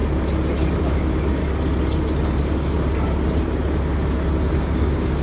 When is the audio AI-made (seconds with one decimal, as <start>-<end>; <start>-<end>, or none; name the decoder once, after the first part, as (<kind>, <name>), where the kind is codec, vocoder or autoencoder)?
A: 0.8-1.4 (codec, DAC); 4.5-5.2

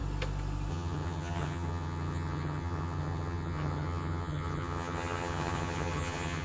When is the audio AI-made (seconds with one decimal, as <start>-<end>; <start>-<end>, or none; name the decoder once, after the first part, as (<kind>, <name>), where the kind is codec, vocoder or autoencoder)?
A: 0.7-6.4 (vocoder, HiFi-GAN)

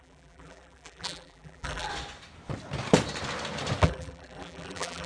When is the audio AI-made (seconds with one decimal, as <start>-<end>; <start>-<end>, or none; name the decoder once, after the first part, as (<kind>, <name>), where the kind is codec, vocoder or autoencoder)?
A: 0.0-1.9 (vocoder, BigVGAN v2); 3.8-5.1

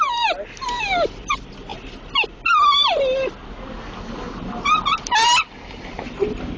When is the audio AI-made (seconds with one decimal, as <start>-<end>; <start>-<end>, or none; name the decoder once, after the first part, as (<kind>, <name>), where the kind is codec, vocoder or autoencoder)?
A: none

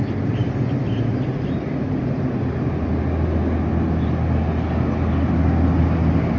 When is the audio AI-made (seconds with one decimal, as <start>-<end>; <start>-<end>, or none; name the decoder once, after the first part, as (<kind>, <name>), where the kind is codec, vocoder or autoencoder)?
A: none

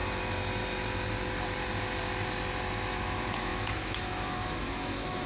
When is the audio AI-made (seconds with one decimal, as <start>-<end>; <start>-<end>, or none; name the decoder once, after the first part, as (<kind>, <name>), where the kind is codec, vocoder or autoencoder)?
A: 2.9-5.3 (autoencoder, DAC-VAE)

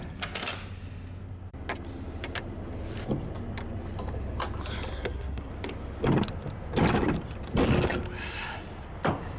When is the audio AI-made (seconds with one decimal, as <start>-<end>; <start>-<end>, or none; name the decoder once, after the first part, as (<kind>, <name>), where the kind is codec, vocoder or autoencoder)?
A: 4.9-5.5 (codec, SNAC)

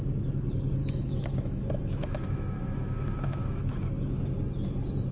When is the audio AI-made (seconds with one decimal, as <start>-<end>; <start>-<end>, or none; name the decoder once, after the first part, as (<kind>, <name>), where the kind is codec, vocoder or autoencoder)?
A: 0.8-3.9 (autoencoder, DAC-VAE)